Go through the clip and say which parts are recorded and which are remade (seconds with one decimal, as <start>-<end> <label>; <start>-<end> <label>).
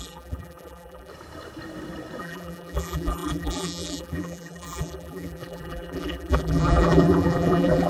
0.0-1.1 remade; 1.1-2.2 recorded; 2.2-7.9 remade